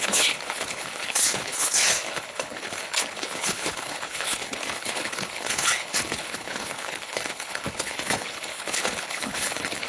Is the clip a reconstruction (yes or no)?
yes